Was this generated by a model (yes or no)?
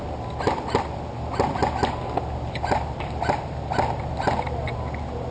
no